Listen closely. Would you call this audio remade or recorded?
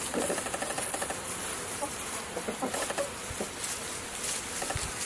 recorded